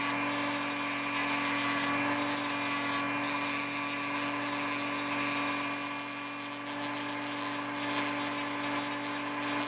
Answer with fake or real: real